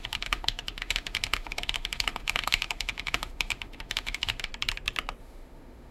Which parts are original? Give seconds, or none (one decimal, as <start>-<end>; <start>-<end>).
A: 4.5-5.2